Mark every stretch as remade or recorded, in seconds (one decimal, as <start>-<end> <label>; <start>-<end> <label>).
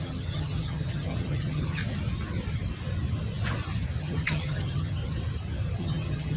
0.0-1.8 remade; 1.8-4.0 recorded; 4.0-5.0 remade; 5.0-5.8 recorded; 5.8-6.4 remade